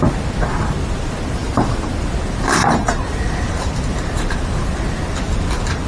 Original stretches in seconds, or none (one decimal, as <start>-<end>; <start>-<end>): 0.0-1.4; 4.9-5.9